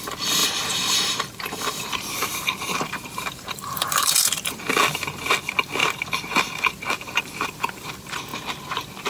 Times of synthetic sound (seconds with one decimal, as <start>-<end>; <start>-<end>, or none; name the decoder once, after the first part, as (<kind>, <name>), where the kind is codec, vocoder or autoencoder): 0.4-4.5 (vocoder, BigVGAN v2); 5.8-7.5